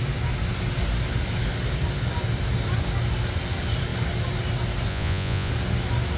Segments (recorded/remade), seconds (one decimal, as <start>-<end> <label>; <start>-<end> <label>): 0.0-4.9 recorded; 4.9-5.5 remade; 5.5-6.2 recorded